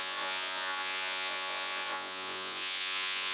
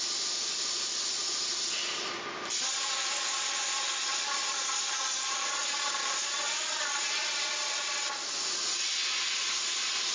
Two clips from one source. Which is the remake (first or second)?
first